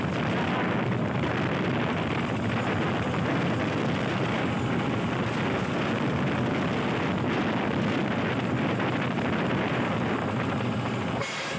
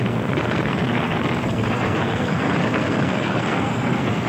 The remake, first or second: second